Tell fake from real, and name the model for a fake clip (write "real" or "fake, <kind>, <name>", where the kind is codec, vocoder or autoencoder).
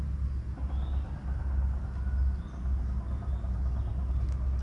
real